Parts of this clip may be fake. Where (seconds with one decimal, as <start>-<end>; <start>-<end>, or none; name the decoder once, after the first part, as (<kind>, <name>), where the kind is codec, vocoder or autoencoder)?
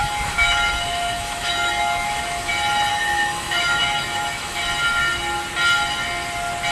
0.0-2.5 (autoencoder, DAC-VAE); 2.9-4.6